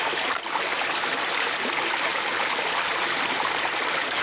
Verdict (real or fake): real